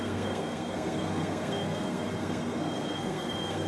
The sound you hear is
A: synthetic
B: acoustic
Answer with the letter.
A